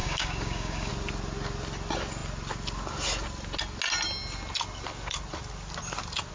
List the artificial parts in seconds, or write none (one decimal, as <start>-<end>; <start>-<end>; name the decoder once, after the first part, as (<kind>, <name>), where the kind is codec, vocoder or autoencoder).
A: 0.0-0.9 (codec, DAC)